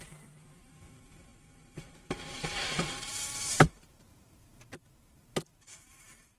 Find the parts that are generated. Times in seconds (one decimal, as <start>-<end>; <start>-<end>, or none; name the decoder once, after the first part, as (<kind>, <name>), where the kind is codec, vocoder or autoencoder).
0.0-6.4 (vocoder, BigVGAN v2)